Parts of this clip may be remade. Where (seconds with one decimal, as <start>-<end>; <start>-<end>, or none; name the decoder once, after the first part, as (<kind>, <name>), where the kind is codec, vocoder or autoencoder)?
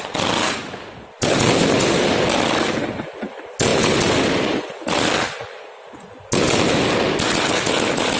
none